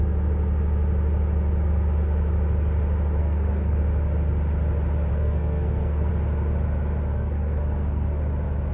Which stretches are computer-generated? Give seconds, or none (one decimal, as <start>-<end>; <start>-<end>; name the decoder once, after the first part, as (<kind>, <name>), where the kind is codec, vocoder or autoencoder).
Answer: 3.2-3.8 (codec, SNAC); 5.1-6.1; 7.1-8.2

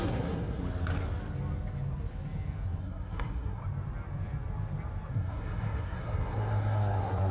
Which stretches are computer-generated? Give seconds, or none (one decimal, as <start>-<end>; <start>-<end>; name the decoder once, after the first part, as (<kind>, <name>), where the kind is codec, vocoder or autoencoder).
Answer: 0.0-0.6 (codec, SNAC); 2.8-3.6; 5.1-7.3

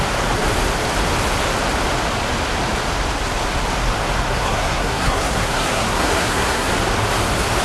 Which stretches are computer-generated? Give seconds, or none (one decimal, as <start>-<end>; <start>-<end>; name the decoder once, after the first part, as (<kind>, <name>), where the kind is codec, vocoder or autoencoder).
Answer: 4.3-6.7 (codec, SNAC)